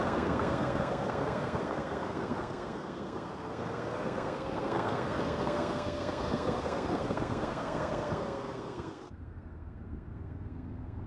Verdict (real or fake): fake